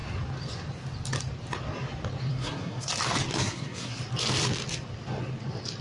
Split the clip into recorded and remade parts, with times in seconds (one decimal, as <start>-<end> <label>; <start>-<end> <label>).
0.0-2.3 recorded; 2.3-2.9 remade; 2.9-3.3 recorded; 3.3-4.0 remade; 4.0-5.8 recorded